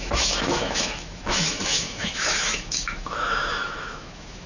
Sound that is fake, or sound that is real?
fake